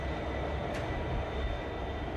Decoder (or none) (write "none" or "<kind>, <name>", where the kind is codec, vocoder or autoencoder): none